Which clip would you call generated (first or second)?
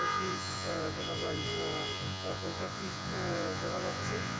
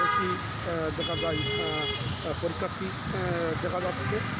first